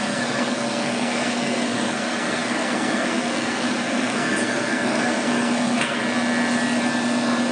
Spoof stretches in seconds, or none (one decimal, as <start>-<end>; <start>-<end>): 0.0-6.0